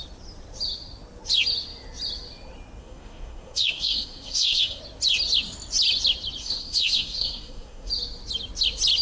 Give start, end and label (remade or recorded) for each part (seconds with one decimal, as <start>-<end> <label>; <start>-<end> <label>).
0.0-2.8 recorded; 2.8-4.8 remade; 4.8-6.4 recorded; 6.4-7.9 remade; 7.9-9.0 recorded